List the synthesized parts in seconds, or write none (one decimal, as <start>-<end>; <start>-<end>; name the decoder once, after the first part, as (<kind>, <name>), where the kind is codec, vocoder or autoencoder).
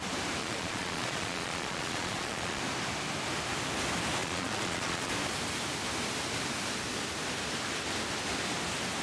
0.4-2.6 (vocoder, Vocos); 4.2-5.1